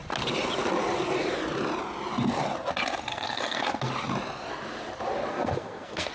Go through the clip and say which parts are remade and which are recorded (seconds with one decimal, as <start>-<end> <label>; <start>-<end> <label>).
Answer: 0.0-3.1 recorded; 3.1-3.9 remade; 3.9-5.3 recorded; 5.3-6.1 remade